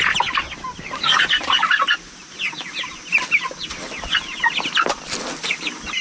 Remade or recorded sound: recorded